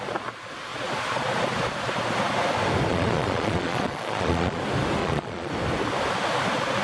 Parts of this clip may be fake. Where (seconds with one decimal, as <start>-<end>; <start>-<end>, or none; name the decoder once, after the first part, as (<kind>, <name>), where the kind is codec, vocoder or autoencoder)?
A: 2.9-4.6 (vocoder, Vocos); 5.0-5.5